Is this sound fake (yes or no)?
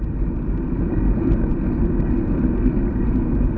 no